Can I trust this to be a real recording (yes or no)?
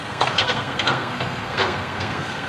no